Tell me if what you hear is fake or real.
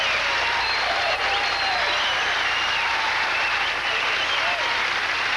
real